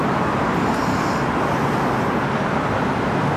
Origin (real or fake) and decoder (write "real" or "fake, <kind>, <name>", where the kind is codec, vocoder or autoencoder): fake, vocoder, BigVGAN v2